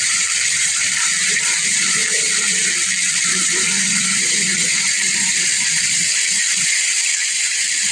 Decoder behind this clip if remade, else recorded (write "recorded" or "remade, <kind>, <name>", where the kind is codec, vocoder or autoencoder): remade, vocoder, BigVGAN v2